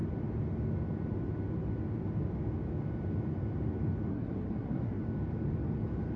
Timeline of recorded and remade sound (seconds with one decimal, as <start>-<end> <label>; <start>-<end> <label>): 0.0-4.1 recorded; 4.1-5.0 remade; 5.0-6.2 recorded

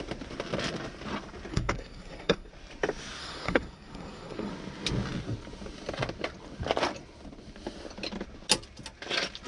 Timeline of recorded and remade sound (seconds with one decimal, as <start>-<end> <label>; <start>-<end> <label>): 0.0-1.5 recorded; 1.5-2.5 remade; 2.5-3.2 recorded; 3.2-4.5 remade; 4.5-9.5 recorded